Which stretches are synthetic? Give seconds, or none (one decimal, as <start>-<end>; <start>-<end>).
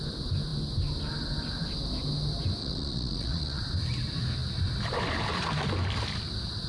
2.6-3.6